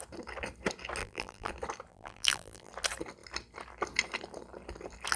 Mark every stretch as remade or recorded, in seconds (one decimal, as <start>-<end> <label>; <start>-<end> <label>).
0.0-1.0 recorded; 1.0-1.5 remade; 1.5-1.9 recorded; 1.9-2.7 remade; 2.7-5.2 recorded